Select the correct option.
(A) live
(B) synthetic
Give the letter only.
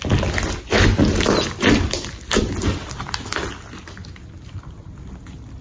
A